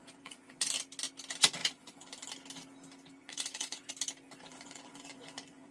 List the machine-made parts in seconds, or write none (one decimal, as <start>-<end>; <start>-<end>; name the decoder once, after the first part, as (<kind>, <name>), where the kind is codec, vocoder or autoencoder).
0.0-0.7 (vocoder, Vocos); 1.6-2.1; 3.2-3.9; 4.5-5.7